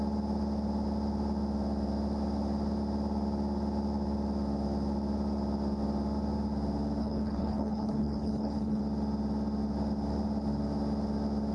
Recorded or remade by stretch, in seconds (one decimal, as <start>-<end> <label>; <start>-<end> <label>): 0.0-7.0 recorded; 7.0-8.8 remade; 8.8-11.5 recorded